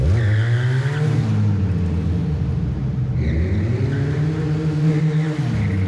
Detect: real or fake real